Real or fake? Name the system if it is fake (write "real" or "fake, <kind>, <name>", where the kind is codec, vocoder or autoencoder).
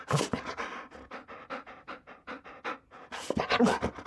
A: real